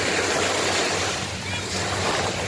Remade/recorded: recorded